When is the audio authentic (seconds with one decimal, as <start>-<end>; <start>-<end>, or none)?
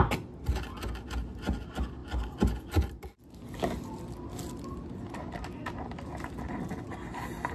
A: 0.0-7.5